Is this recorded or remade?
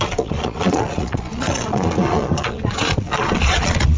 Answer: remade